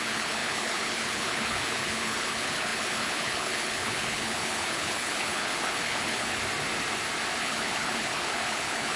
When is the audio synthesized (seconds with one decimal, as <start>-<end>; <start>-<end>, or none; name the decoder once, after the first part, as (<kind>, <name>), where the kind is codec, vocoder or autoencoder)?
0.0-6.4 (codec, HILCodec); 7.4-9.0